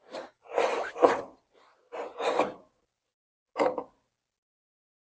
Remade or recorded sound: recorded